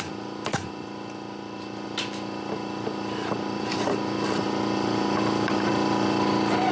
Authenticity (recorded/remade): recorded